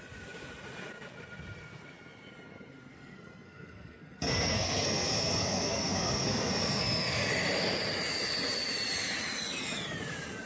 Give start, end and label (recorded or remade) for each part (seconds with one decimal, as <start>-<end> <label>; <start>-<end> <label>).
0.0-2.9 recorded; 2.9-7.3 remade; 7.3-10.5 recorded